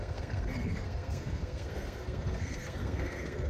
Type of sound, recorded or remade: remade